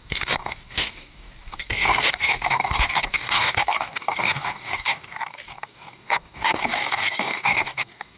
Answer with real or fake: fake